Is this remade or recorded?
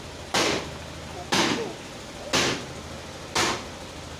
recorded